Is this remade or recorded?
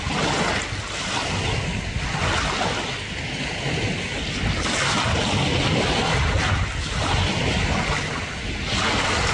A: recorded